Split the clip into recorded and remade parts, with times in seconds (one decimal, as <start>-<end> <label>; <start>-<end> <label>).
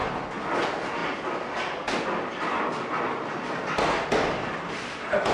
0.0-5.3 recorded